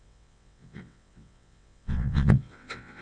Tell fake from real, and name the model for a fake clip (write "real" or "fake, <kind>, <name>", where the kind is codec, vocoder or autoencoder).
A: fake, vocoder, WaveNeXt